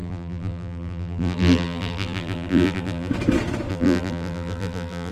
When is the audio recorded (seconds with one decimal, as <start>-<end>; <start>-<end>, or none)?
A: 3.1-3.7